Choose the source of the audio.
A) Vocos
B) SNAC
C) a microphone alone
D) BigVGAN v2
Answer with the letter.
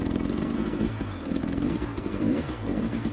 B